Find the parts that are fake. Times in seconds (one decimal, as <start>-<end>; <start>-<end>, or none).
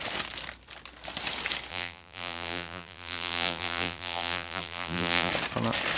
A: 1.7-5.3